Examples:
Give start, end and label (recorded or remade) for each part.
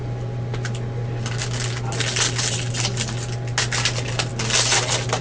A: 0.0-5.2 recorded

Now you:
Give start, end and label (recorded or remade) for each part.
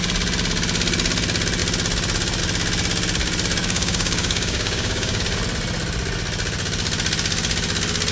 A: 0.0-3.6 recorded; 3.6-5.2 remade; 5.2-8.1 recorded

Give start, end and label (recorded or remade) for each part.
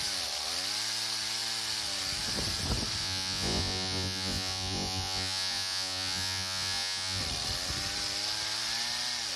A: 0.0-3.0 recorded; 3.0-7.2 remade; 7.2-9.4 recorded